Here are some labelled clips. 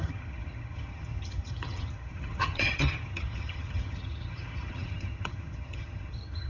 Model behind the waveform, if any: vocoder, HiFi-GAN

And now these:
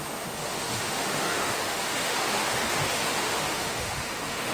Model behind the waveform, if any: autoencoder, DAC-VAE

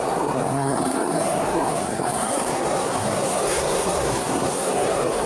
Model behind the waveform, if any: codec, SNAC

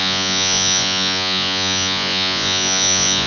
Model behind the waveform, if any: vocoder, Vocos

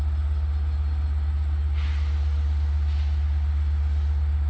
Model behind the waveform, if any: none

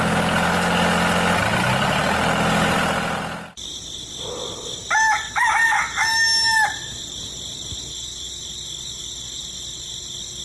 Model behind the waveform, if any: none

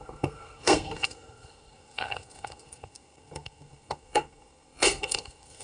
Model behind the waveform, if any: codec, SNAC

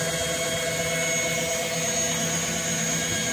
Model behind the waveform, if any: none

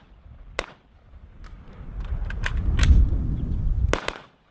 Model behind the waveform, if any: none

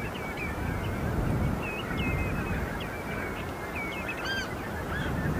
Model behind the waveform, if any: none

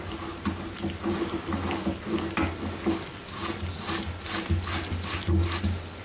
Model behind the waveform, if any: none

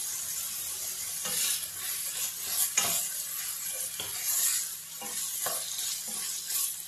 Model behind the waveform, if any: none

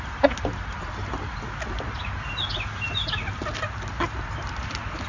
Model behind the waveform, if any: none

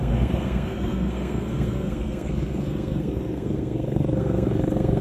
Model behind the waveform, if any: codec, SNAC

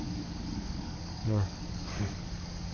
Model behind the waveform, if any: codec, DAC